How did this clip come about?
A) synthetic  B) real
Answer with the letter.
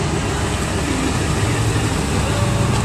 B